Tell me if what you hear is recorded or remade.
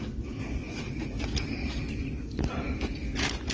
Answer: recorded